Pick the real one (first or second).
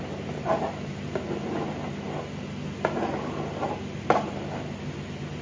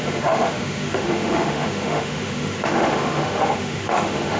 first